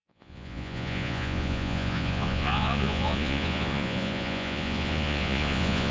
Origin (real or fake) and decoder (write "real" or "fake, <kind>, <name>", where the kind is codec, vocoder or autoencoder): fake, vocoder, Vocos